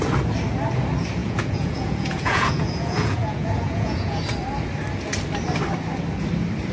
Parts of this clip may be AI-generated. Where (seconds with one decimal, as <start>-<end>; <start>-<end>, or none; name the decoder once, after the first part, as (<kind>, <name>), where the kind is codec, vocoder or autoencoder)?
1.2-4.2 (vocoder, Vocos)